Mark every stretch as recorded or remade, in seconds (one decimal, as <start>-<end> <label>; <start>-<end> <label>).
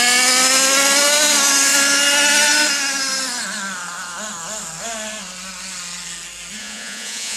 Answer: 0.0-6.6 recorded; 6.6-7.4 remade